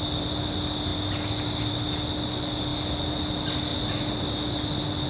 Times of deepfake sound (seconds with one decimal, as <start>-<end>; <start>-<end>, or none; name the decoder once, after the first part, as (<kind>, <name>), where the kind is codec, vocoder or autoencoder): none